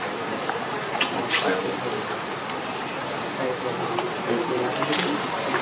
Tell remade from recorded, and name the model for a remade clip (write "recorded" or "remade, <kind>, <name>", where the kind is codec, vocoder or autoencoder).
recorded